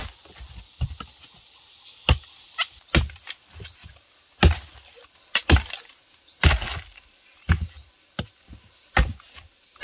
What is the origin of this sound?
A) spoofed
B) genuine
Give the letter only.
B